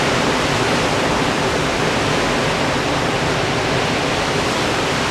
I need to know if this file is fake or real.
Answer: real